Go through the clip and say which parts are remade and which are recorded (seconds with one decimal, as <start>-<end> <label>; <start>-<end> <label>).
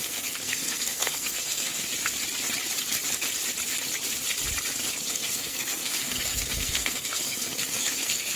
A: 0.0-1.9 remade; 1.9-5.1 recorded; 5.1-8.4 remade